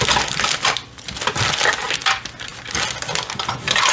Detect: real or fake real